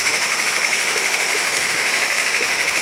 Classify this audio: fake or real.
fake